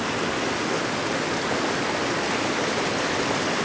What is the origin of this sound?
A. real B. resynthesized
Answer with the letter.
A